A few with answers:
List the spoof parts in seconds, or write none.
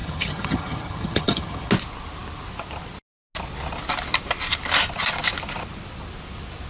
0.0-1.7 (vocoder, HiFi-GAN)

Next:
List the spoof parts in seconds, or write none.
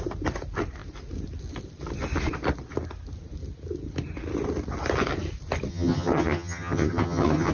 5.7-7.5 (vocoder, HiFi-GAN)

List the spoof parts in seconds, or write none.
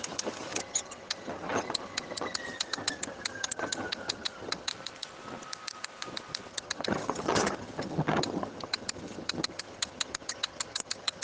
0.0-4.7 (vocoder, HiFi-GAN); 6.5-11.2